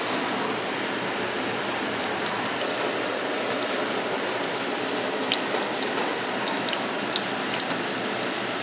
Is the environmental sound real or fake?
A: fake